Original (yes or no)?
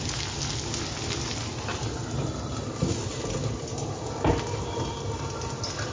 yes